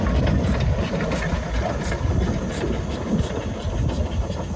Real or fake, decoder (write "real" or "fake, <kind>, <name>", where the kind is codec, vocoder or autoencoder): real